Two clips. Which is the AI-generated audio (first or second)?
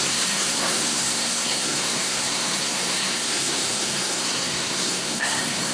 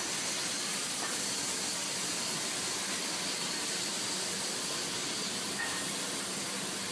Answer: first